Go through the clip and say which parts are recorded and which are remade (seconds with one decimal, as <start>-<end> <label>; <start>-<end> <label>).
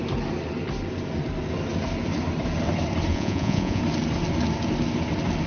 0.0-3.1 recorded; 3.1-3.8 remade; 3.8-5.5 recorded